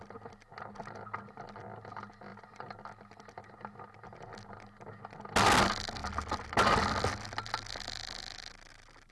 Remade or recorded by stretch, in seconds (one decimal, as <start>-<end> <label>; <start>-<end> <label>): 0.0-2.3 recorded; 2.3-3.3 remade; 3.3-9.1 recorded